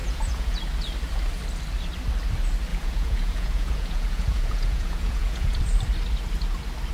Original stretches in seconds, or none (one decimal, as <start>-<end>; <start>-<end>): 0.5-2.7; 5.6-6.9